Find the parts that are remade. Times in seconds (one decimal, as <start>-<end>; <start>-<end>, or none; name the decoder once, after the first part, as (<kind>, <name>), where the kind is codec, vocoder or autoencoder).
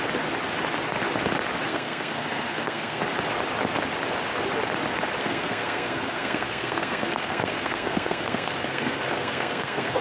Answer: 1.7-3.0 (codec, SNAC); 5.2-10.0